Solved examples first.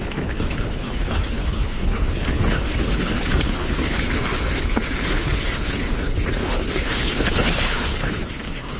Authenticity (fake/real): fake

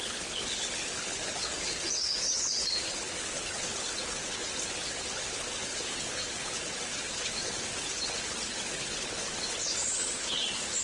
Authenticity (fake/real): fake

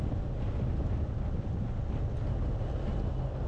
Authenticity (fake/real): real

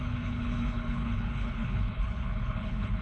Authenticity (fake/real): fake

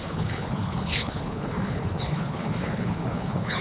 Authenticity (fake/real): fake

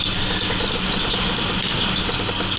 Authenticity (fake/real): real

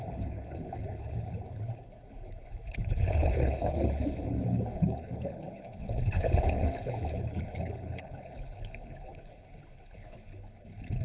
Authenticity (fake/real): fake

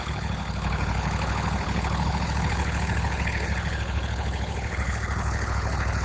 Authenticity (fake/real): fake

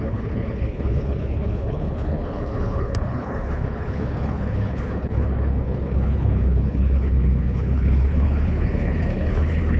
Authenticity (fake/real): fake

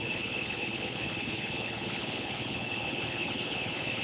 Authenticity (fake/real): fake